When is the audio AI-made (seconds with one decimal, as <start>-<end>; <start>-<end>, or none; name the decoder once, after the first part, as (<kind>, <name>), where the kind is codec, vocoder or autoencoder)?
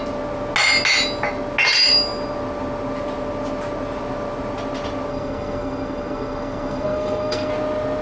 5.1-7.5 (codec, SNAC)